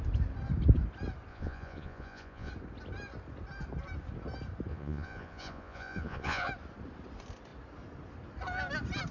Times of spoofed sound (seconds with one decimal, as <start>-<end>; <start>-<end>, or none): 1.3-2.5; 4.7-6.5